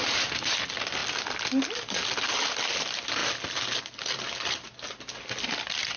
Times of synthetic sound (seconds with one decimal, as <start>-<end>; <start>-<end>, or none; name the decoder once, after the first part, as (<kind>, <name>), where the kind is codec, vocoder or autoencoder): none